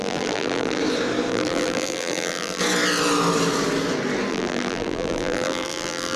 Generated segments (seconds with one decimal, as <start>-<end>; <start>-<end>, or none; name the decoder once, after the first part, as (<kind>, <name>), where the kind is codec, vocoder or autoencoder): 0.0-0.8 (vocoder, BigVGAN v2); 1.3-2.6; 4.3-6.2